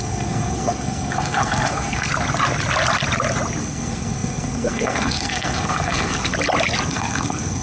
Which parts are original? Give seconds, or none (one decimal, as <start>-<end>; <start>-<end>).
2.1-3.6; 6.3-6.9